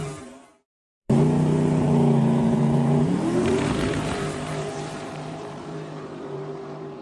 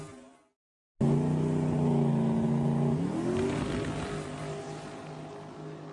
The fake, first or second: first